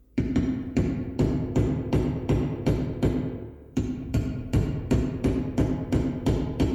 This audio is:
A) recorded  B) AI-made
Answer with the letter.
B